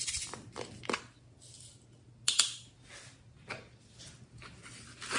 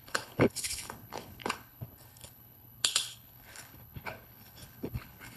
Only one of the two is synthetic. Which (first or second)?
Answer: second